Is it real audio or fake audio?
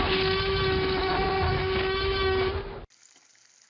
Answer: real